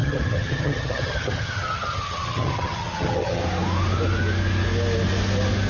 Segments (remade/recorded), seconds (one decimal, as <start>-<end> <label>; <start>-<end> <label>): 0.0-3.4 remade; 3.4-5.7 recorded